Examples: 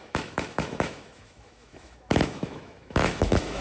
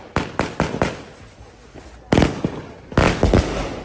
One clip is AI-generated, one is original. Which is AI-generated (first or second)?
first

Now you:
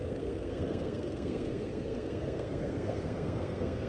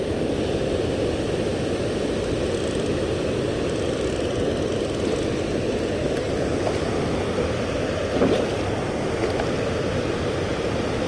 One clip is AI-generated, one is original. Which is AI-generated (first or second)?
first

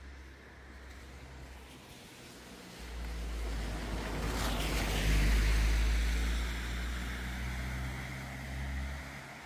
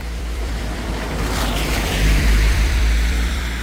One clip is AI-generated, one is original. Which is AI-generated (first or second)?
second